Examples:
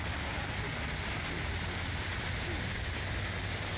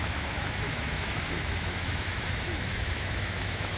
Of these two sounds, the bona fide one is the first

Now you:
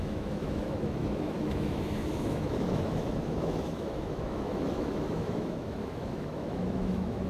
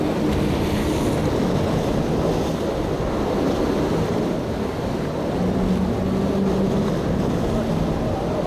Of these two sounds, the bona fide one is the second